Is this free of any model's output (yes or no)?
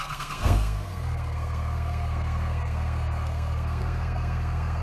no